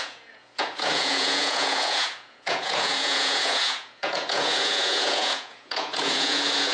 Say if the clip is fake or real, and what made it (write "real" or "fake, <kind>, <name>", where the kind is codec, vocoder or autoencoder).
fake, vocoder, Vocos